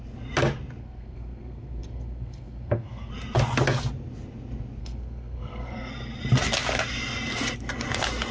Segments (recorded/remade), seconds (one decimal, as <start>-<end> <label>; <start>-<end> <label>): 0.0-0.8 recorded; 0.8-3.1 remade; 3.1-4.8 recorded; 4.8-5.9 remade; 5.9-8.3 recorded